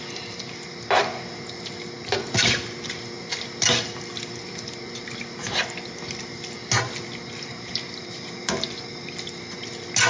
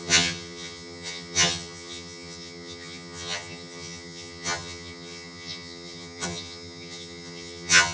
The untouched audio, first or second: first